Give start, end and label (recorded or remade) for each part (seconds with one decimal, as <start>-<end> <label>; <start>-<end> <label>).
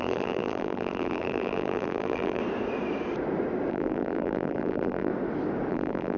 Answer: 0.0-2.4 remade; 2.4-3.7 recorded; 3.7-5.1 remade; 5.1-5.7 recorded; 5.7-6.2 remade